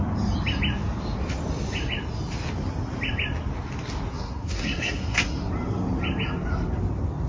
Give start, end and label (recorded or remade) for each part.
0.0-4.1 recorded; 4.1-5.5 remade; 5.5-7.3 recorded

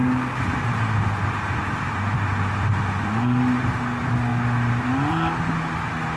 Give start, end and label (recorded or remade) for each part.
0.0-6.2 recorded

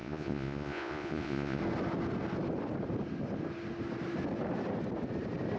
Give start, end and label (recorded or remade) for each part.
0.0-1.6 remade; 1.6-5.6 recorded

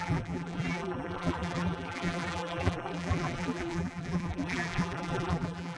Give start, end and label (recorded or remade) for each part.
0.0-5.8 remade

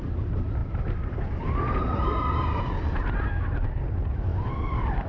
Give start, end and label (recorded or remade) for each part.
0.0-5.1 recorded